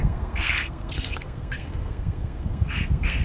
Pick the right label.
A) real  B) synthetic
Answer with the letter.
B